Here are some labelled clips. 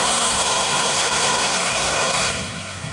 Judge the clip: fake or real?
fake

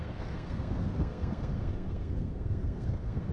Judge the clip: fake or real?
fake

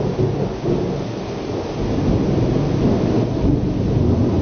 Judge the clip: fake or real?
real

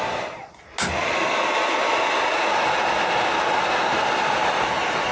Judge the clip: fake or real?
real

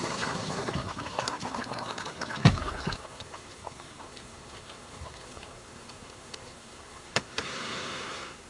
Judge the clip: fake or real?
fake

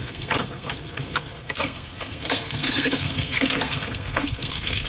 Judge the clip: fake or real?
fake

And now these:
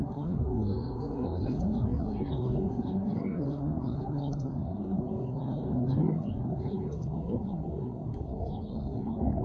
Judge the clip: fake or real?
fake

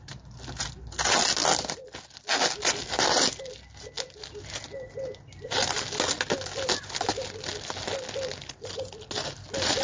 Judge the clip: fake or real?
real